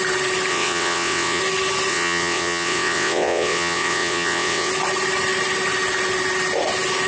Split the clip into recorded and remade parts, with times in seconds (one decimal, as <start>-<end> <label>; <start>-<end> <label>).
0.0-0.5 recorded; 0.5-1.4 remade; 1.4-1.9 recorded; 1.9-4.7 remade; 4.7-7.1 recorded